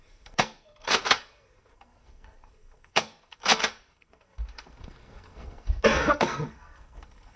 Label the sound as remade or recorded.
remade